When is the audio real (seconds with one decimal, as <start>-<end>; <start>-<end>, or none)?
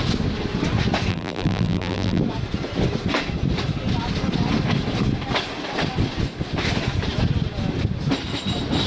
0.0-1.1; 2.2-8.9